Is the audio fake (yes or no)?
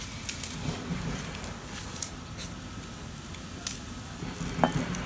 no